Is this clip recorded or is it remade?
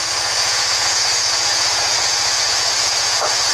remade